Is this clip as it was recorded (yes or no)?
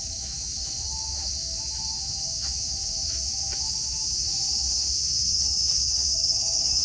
no